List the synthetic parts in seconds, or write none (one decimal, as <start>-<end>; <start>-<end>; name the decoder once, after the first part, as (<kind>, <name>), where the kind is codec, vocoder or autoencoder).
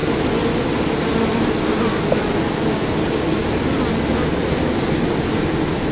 none